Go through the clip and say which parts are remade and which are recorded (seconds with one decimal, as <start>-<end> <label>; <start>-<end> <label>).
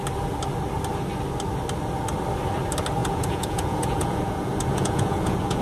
0.0-3.0 recorded; 3.0-5.6 remade